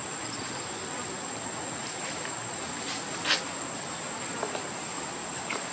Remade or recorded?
recorded